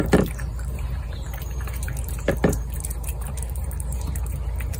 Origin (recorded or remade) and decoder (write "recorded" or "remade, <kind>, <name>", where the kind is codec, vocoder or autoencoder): remade, vocoder, BigVGAN v2